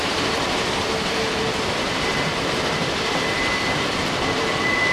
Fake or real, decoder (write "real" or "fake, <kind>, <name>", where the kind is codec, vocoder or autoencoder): fake, vocoder, BigVGAN v2